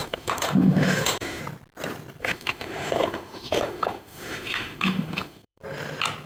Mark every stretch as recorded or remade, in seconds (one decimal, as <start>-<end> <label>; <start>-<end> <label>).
0.0-1.4 remade; 1.4-2.2 recorded; 2.2-5.6 remade; 5.6-6.3 recorded